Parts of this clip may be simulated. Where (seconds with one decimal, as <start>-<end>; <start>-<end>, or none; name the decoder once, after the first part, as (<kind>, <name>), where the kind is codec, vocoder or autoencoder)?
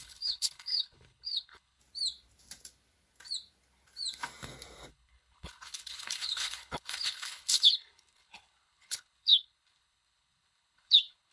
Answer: 0.0-1.8 (codec, HILCodec); 4.9-11.3